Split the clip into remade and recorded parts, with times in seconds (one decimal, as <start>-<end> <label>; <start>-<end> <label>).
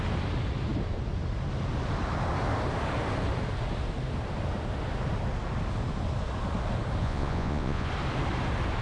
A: 0.0-7.0 recorded; 7.0-7.9 remade; 7.9-8.8 recorded